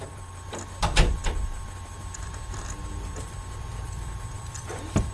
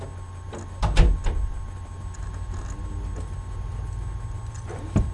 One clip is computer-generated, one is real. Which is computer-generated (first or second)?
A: first